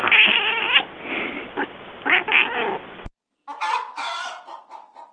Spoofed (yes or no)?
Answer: no